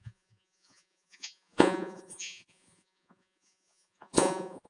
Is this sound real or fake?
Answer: fake